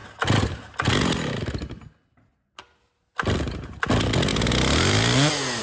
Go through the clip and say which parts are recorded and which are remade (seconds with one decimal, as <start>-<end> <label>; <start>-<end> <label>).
0.0-5.6 recorded